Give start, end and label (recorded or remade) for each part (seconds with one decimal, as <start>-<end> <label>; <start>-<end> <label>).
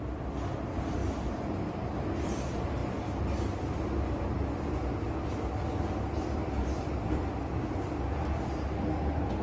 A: 0.0-9.4 recorded